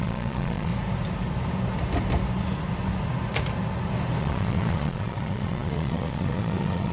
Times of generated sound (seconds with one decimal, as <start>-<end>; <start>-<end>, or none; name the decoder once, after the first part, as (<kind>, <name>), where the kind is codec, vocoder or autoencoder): 0.0-0.7 (vocoder, Vocos); 4.2-6.9